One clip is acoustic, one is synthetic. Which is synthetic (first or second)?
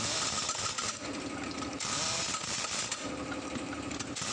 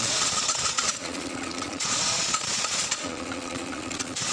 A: second